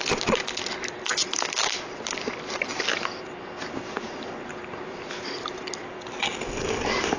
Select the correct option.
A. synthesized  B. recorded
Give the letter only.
B